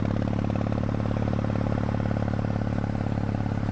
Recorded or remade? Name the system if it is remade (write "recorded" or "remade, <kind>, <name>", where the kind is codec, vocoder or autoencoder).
remade, vocoder, BigVGAN v2